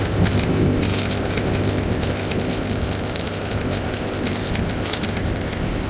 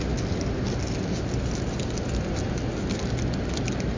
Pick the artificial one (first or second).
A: first